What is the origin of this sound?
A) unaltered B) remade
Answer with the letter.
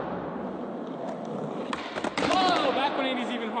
A